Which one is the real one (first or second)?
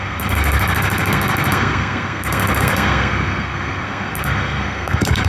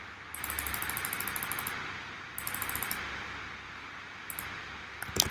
second